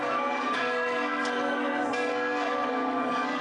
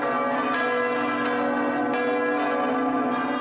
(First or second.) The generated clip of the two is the first